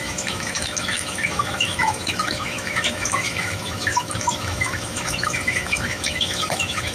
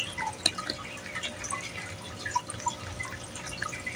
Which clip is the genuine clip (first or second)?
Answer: second